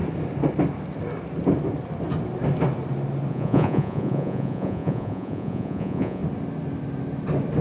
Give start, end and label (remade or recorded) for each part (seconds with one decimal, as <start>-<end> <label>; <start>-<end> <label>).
0.0-3.3 recorded; 3.3-6.2 remade; 6.2-7.6 recorded